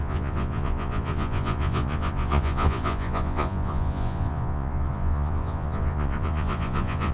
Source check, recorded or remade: remade